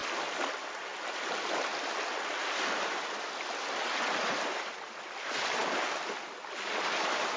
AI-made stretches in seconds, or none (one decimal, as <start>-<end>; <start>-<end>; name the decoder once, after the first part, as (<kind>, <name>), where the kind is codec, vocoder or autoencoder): none